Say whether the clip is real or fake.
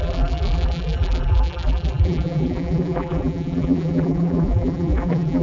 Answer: fake